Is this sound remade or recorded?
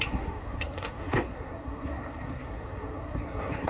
remade